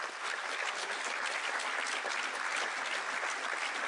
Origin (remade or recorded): recorded